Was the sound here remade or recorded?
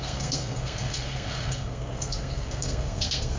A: remade